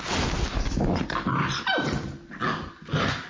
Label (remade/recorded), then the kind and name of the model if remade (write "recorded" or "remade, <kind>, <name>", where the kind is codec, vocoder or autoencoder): recorded